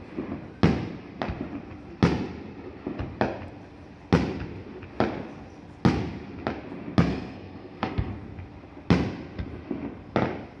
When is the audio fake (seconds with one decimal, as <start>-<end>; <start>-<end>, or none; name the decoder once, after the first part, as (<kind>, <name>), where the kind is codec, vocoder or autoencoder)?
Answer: 7.1-8.1 (codec, SNAC)